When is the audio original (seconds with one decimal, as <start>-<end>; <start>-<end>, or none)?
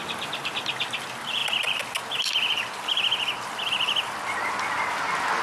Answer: 0.0-5.4